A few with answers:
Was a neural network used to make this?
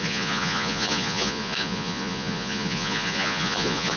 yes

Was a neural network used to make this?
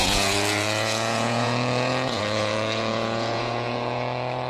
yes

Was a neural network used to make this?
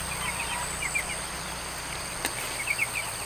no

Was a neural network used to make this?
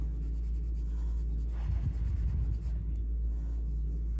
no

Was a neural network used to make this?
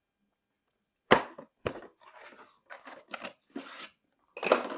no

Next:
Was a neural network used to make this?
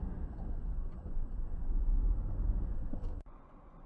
yes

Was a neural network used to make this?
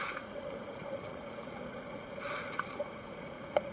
yes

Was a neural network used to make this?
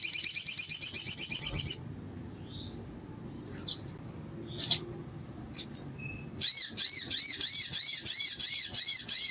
no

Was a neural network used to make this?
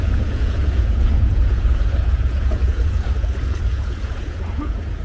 yes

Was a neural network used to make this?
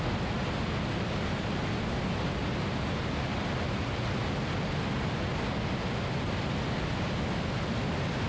no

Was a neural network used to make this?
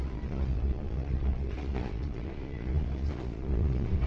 yes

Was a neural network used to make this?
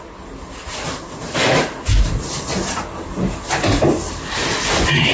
no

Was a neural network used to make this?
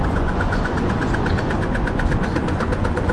yes